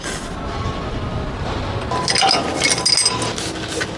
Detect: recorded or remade recorded